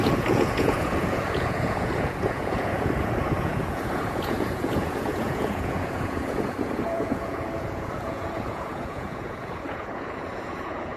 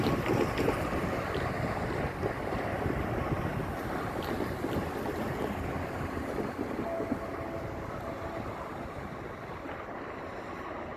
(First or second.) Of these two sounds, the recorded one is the second